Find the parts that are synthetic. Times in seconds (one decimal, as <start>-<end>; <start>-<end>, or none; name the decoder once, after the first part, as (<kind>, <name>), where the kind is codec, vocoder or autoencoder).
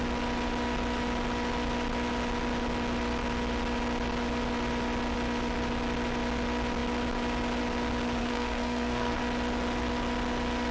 8.2-9.2 (codec, SNAC)